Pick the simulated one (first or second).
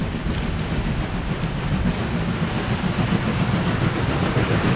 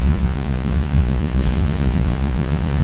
second